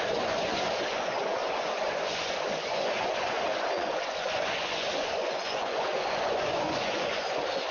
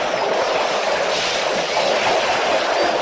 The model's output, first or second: first